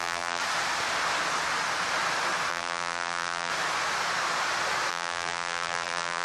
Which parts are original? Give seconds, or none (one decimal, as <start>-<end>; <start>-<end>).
0.4-2.5; 3.5-4.9